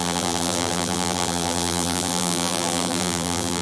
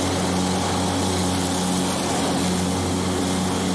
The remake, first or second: first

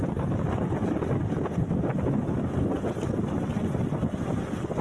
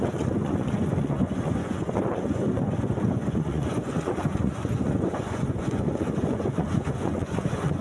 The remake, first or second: second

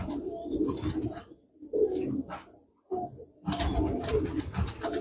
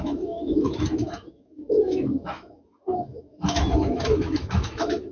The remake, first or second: second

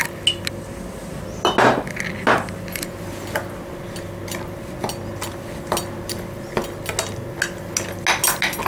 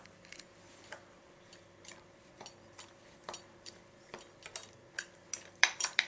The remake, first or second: second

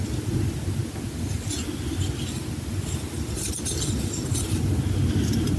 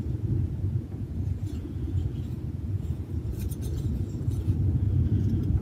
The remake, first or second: second